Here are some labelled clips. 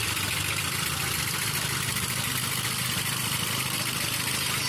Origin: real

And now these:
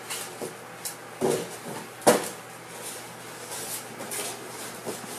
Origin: real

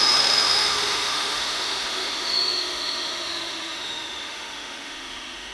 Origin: fake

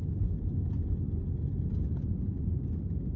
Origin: real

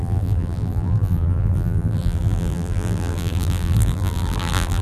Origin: fake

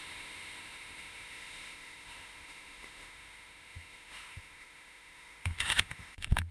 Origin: fake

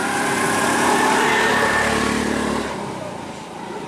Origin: fake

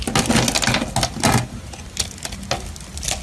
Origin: real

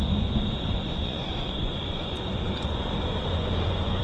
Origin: fake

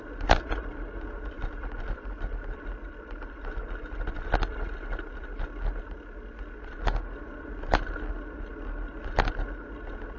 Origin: real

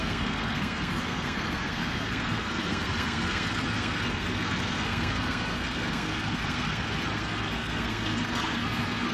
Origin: fake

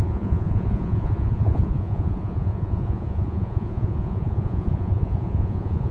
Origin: fake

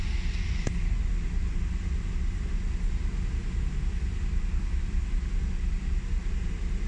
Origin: real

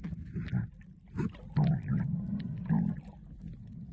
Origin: real